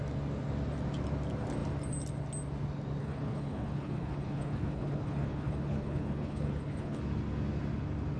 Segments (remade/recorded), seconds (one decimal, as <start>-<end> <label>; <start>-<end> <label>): 0.0-3.0 recorded; 3.0-7.0 remade; 7.0-8.2 recorded